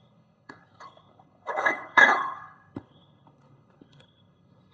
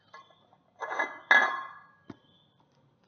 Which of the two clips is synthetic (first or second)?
first